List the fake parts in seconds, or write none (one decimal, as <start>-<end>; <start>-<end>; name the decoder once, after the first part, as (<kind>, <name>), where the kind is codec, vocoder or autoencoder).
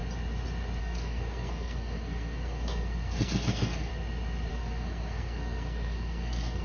0.8-3.9 (codec, SNAC); 4.5-6.6